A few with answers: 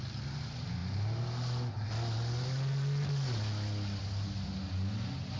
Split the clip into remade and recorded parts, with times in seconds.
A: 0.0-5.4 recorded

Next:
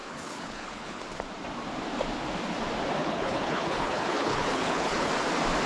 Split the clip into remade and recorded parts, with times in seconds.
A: 0.0-1.0 remade; 1.0-3.0 recorded; 3.0-5.1 remade; 5.1-5.7 recorded

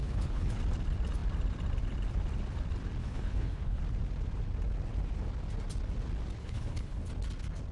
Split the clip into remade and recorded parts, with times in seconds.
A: 0.0-0.6 remade; 0.6-3.0 recorded; 3.0-3.8 remade; 3.8-6.4 recorded; 6.4-7.1 remade; 7.1-7.7 recorded

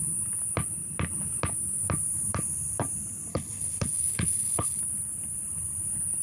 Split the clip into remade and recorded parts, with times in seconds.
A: 0.0-3.3 recorded; 3.3-4.8 remade; 4.8-6.2 recorded

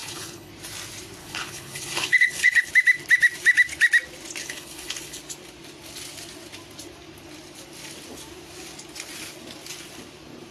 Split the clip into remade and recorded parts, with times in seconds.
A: 0.0-0.5 remade; 0.5-1.2 recorded; 1.2-2.7 remade; 2.7-4.4 recorded; 4.4-5.2 remade; 5.2-10.5 recorded